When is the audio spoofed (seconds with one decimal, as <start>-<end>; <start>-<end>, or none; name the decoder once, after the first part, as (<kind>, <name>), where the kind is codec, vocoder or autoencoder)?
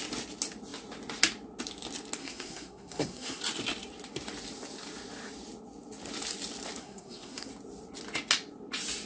2.2-3.4 (codec, SNAC); 6.8-7.5